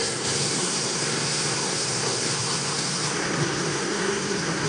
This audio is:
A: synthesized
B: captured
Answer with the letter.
A